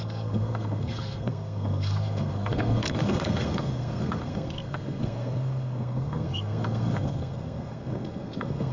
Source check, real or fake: fake